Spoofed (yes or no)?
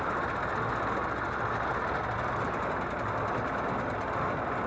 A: no